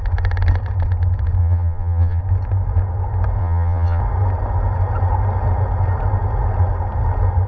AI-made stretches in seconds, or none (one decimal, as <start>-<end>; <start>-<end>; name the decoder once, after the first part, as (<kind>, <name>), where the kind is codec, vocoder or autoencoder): 1.4-2.2 (vocoder, Vocos); 3.4-4.0